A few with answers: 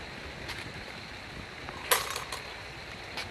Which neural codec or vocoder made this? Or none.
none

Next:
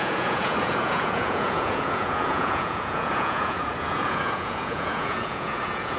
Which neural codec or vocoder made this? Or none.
vocoder, Vocos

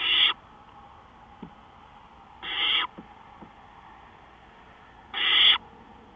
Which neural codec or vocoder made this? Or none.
none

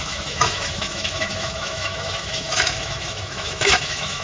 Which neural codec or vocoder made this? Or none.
autoencoder, DAC-VAE